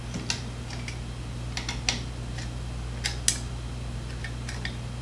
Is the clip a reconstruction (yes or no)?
no